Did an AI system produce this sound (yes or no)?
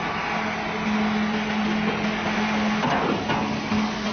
no